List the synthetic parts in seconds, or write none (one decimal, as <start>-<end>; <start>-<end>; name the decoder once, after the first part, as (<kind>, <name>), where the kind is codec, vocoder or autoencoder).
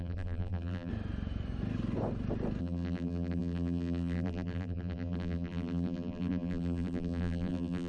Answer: 0.0-0.9 (vocoder, BigVGAN v2); 2.6-7.9